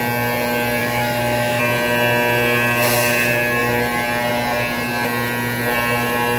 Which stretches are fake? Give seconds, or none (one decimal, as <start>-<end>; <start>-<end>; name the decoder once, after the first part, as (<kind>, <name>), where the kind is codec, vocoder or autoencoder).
0.8-1.6 (autoencoder, DAC-VAE)